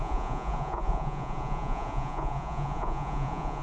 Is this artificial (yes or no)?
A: yes